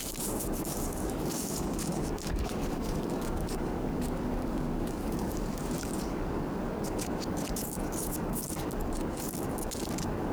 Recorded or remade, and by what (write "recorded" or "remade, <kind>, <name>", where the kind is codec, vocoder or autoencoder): remade, codec, DAC